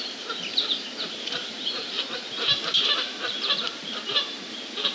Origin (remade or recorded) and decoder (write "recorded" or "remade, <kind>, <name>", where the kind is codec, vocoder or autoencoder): remade, vocoder, BigVGAN v2